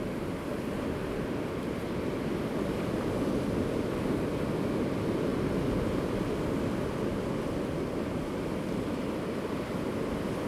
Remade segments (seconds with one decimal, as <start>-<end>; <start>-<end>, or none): none